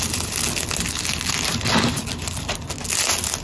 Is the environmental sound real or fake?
real